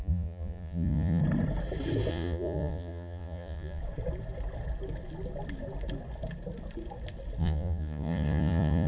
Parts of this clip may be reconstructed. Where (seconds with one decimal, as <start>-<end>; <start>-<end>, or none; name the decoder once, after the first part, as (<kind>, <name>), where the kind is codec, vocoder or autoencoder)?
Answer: 0.0-1.2 (vocoder, Vocos); 2.1-3.8; 7.4-8.9